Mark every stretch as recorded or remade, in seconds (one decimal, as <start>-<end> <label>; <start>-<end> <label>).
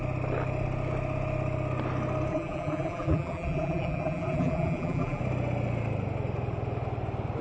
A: 0.0-2.3 recorded; 2.3-5.2 remade; 5.2-7.4 recorded